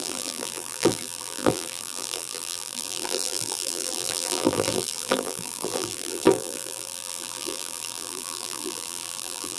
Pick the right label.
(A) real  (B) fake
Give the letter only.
B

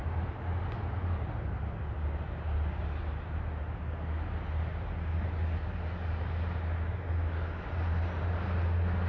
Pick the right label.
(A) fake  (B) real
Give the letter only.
B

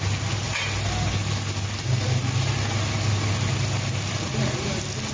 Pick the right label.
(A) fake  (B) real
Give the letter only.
B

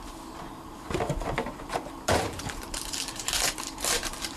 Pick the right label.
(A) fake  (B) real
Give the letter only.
A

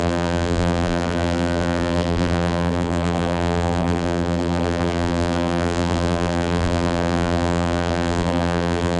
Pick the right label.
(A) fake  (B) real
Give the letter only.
A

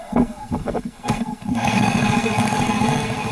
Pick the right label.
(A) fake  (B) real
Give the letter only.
A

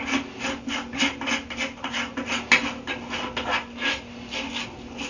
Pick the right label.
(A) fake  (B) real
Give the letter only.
B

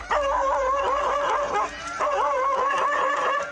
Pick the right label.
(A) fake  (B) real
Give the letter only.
B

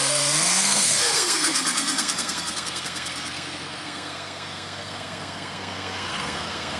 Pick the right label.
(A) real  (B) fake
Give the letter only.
B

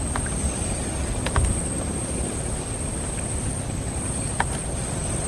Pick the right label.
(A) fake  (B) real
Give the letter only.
B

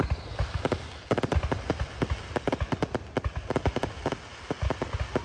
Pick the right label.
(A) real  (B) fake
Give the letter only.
A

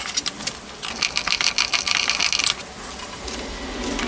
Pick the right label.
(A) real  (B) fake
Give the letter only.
A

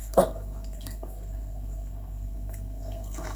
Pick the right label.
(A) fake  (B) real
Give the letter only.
A